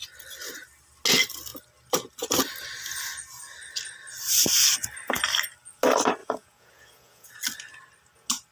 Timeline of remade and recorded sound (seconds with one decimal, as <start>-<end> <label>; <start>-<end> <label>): 0.0-6.2 recorded; 6.2-7.3 remade; 7.3-8.5 recorded